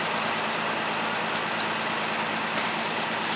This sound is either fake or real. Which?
real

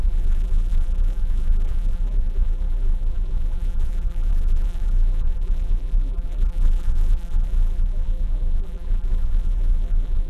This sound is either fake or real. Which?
fake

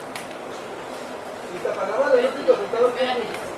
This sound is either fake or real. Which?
fake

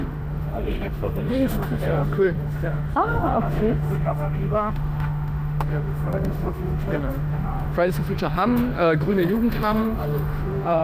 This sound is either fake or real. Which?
fake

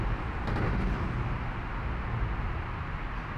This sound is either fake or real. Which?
real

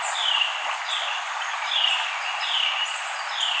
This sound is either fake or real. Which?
real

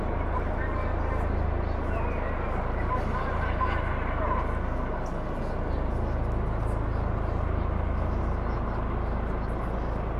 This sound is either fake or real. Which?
real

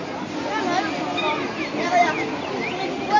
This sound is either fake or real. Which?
real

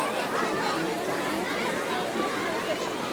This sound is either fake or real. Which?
fake